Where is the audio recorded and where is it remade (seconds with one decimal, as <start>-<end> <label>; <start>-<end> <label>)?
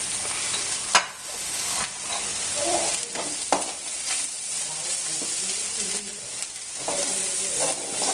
0.0-2.3 recorded; 2.3-6.8 remade; 6.8-8.1 recorded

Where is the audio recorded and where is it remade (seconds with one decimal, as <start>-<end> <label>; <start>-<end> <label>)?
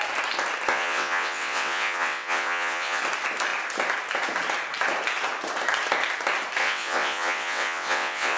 0.0-0.7 recorded; 0.7-3.0 remade; 3.0-6.6 recorded; 6.6-8.4 remade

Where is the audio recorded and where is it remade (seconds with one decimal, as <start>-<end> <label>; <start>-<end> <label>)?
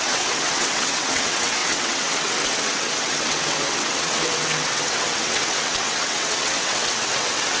0.0-7.6 remade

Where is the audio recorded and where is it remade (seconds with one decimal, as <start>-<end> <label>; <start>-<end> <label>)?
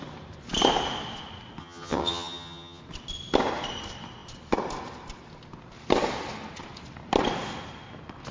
0.0-1.6 recorded; 1.6-2.8 remade; 2.8-8.3 recorded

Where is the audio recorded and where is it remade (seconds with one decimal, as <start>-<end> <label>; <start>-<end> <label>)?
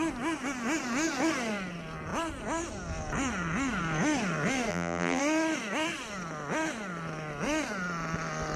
0.0-4.7 recorded; 4.7-5.2 remade; 5.2-8.6 recorded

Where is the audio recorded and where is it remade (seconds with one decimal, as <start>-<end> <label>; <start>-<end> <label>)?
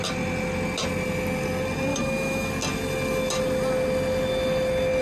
0.0-1.9 recorded; 1.9-2.5 remade; 2.5-5.0 recorded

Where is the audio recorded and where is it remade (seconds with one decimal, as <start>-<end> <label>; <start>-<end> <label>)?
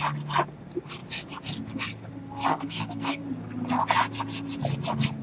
0.0-2.5 recorded; 2.5-3.2 remade; 3.2-5.2 recorded